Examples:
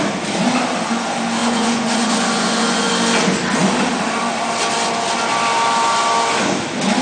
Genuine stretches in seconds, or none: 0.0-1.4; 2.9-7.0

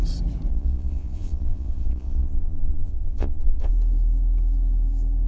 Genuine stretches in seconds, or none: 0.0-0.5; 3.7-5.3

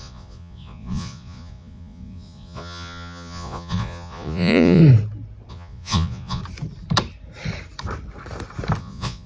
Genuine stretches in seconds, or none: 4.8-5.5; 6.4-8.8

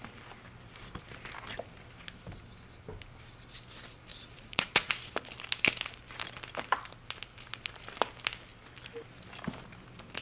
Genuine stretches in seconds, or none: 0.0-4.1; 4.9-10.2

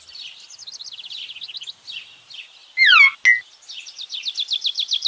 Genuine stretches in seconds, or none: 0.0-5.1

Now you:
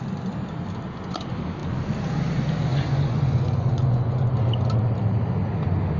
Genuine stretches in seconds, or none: 0.0-2.7; 4.3-6.0

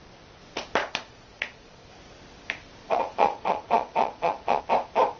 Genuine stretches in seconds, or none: 0.0-0.8; 1.9-2.8; 4.6-5.2